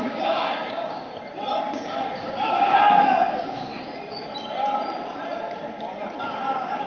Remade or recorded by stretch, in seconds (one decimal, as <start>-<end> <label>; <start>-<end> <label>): 0.0-1.1 remade; 1.1-1.6 recorded; 1.6-3.7 remade; 3.7-6.2 recorded; 6.2-6.9 remade